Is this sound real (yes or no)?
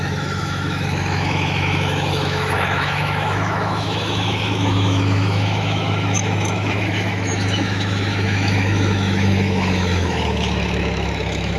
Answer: no